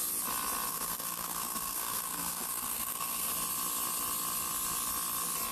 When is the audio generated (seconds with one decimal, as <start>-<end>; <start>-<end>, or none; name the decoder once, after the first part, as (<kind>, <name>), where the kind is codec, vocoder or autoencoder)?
0.7-3.3 (codec, SNAC)